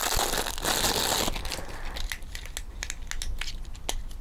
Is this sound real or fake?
real